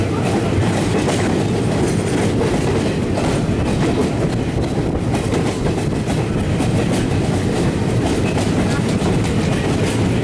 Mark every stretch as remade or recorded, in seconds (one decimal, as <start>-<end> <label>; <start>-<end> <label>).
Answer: 0.0-10.2 recorded